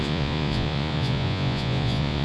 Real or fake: fake